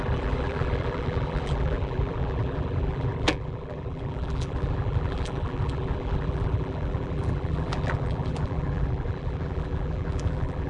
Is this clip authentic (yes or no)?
no